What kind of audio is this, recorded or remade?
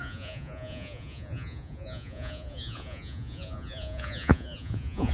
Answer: remade